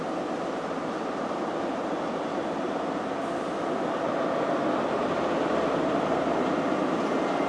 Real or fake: real